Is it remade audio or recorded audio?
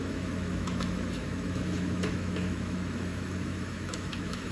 remade